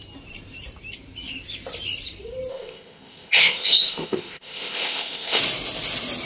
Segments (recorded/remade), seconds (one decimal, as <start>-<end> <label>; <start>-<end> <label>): 0.0-2.5 recorded; 2.5-5.4 remade; 5.4-6.3 recorded